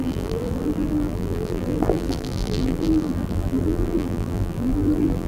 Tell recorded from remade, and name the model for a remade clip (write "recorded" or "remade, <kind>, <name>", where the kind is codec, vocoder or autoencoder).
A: remade, vocoder, BigVGAN v2